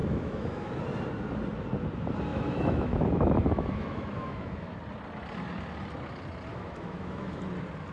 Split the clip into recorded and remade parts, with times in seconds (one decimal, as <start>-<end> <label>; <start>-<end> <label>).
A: 0.0-0.7 remade; 0.7-2.3 recorded; 2.3-4.8 remade; 4.8-6.5 recorded; 6.5-7.4 remade; 7.4-7.9 recorded